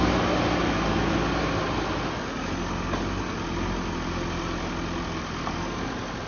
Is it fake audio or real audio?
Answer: real